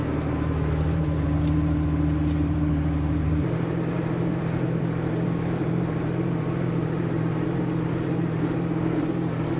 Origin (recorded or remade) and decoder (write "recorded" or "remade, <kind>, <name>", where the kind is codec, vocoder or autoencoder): remade, vocoder, BigVGAN v2